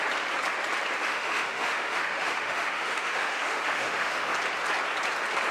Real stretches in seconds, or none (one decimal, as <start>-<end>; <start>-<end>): 0.0-1.0; 4.3-5.5